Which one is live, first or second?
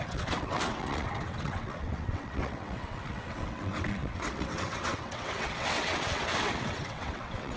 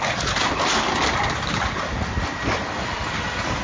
second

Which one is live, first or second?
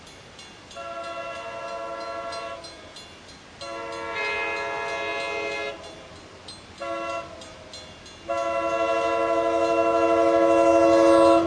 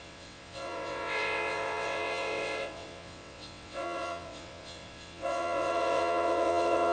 first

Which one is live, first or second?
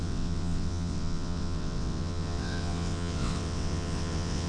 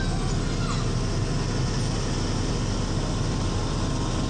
second